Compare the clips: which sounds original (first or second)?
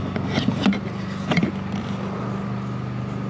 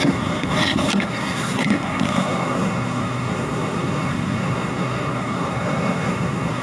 first